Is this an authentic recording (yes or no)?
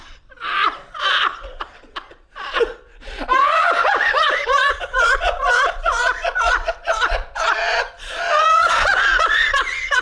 no